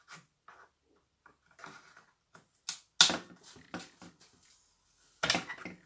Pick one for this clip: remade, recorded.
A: recorded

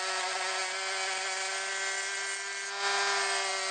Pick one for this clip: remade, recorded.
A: recorded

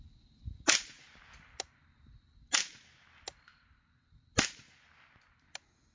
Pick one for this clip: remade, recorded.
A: recorded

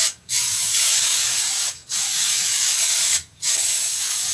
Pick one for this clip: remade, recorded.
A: remade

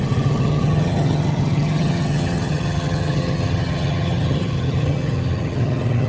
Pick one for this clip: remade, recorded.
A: remade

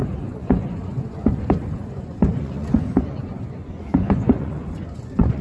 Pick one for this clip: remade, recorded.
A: remade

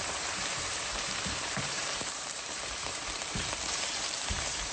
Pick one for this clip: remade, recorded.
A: remade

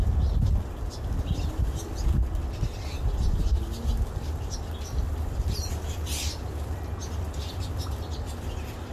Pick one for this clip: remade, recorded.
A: recorded